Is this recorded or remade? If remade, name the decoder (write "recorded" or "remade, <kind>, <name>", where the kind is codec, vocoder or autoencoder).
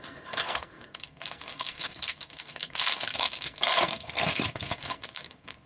remade, codec, SNAC